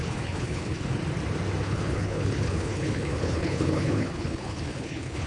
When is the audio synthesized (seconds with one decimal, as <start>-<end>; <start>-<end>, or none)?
0.0-1.0; 1.6-5.3